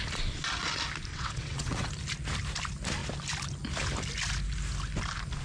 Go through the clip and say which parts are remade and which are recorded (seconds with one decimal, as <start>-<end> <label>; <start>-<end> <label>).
0.0-1.1 recorded; 1.1-1.9 remade; 1.9-5.4 recorded